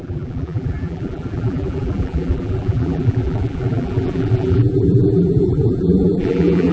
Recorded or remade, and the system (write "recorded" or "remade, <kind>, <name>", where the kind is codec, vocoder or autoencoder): remade, vocoder, BigVGAN v2